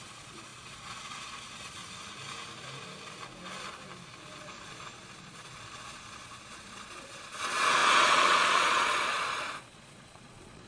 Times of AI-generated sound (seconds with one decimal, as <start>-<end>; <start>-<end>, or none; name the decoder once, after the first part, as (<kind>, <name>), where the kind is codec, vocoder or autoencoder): 0.0-1.8 (vocoder, Vocos); 4.4-10.7